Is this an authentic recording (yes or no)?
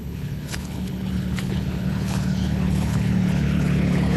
no